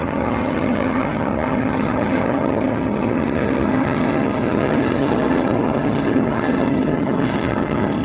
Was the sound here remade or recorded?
remade